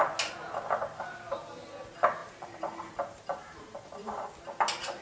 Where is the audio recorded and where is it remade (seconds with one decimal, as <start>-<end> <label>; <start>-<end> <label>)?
0.0-2.2 recorded; 2.2-4.3 remade; 4.3-5.0 recorded